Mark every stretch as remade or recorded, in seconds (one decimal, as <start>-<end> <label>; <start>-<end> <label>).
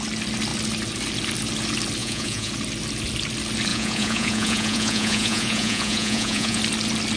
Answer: 0.0-2.0 recorded; 2.0-2.5 remade; 2.5-3.7 recorded; 3.7-6.6 remade; 6.6-7.2 recorded